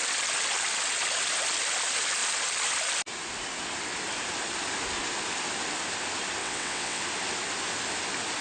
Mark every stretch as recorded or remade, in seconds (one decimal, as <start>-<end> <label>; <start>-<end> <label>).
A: 0.0-6.4 recorded; 6.4-7.0 remade; 7.0-8.4 recorded